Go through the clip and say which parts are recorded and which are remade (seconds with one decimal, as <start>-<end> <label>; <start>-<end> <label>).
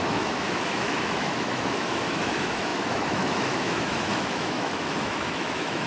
0.0-5.9 remade